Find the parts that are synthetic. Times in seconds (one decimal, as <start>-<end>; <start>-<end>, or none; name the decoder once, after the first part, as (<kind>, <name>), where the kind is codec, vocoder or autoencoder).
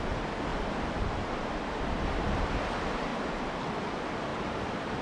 0.5-2.3 (vocoder, BigVGAN v2); 4.3-5.0